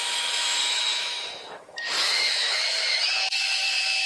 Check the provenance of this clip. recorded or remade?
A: remade